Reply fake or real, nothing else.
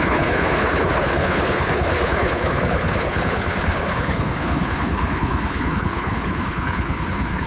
fake